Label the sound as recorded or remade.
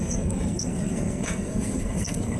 remade